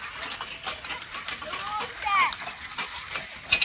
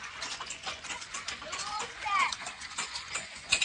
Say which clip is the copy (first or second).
second